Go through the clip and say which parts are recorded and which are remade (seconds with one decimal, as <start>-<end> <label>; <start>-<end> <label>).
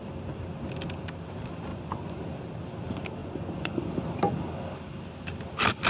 0.0-1.7 recorded; 1.7-2.2 remade; 2.2-3.2 recorded; 3.2-3.9 remade; 3.9-5.9 recorded